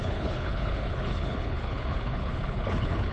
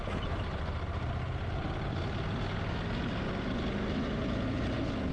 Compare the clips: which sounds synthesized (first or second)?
first